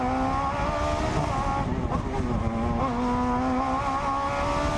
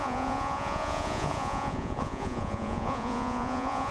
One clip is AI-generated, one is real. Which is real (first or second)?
first